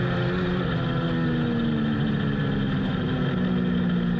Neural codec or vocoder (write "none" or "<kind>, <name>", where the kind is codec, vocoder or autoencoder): none